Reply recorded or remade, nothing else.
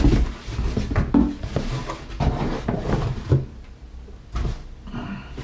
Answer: recorded